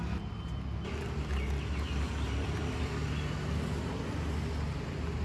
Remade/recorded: recorded